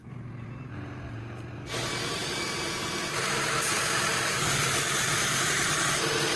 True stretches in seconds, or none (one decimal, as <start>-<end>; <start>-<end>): 0.0-2.2; 6.0-6.4